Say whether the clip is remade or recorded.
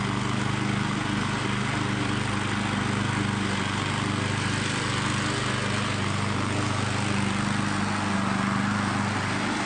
recorded